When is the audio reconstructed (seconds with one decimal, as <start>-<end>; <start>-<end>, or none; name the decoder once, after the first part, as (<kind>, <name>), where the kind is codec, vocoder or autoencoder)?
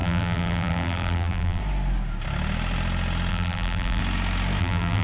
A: 0.0-1.6 (vocoder, BigVGAN v2); 3.3-4.0; 4.6-5.0